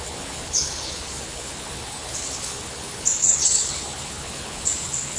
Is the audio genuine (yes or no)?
no